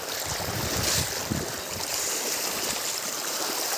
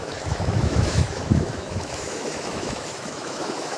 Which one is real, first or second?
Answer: first